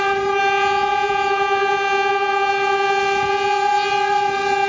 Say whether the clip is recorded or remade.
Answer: recorded